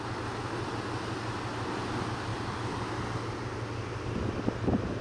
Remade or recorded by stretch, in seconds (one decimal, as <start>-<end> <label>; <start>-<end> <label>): 0.0-5.0 recorded